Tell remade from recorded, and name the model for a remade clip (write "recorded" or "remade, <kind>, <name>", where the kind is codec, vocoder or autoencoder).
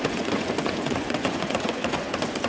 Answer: remade, vocoder, Vocos